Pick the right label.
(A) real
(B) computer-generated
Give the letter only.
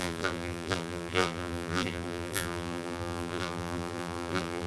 B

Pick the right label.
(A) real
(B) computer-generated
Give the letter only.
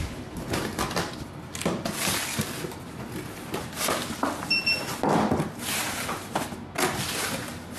A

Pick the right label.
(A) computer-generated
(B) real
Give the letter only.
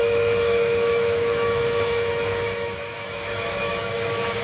A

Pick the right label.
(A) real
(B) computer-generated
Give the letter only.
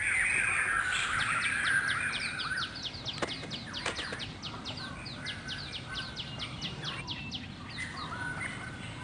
A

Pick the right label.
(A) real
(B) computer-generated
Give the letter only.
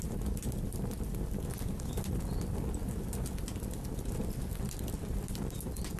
A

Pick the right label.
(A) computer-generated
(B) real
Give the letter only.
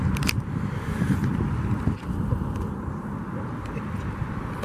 A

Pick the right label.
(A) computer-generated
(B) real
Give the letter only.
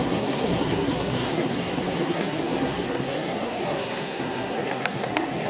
A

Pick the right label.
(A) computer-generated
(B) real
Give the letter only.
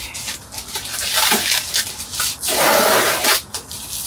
B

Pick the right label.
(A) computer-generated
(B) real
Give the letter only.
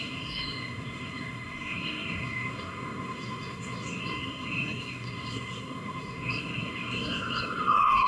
A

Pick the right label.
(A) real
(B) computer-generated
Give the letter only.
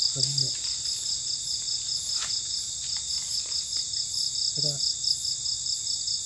A